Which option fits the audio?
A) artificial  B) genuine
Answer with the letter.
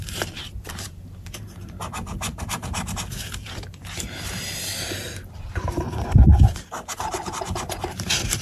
A